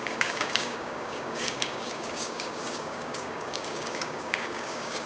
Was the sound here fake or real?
fake